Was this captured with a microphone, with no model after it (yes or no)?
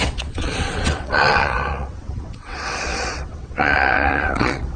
no